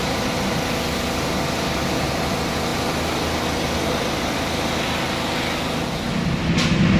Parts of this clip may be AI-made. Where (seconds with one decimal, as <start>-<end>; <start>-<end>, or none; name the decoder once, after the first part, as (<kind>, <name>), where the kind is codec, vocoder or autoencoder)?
0.0-0.5 (vocoder, BigVGAN v2)